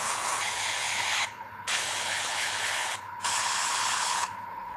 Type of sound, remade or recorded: remade